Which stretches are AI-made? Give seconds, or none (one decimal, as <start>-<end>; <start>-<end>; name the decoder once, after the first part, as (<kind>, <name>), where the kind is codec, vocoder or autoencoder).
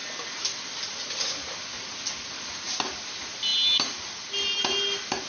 none